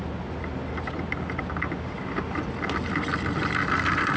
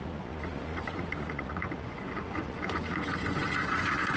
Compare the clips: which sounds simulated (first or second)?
second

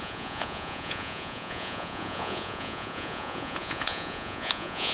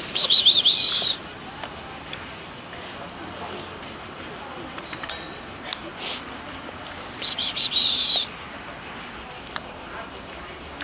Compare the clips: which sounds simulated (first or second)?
first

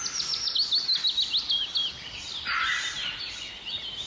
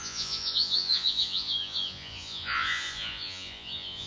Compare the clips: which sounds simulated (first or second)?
second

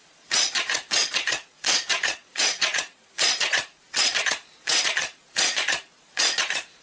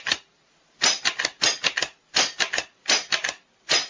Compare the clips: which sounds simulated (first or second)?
first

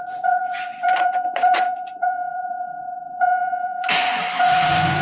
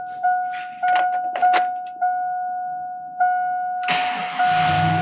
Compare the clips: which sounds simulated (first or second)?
first